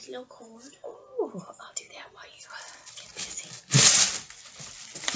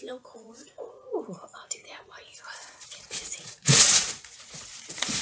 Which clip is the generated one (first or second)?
second